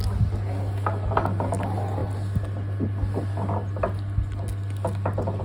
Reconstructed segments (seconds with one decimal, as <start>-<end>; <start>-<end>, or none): none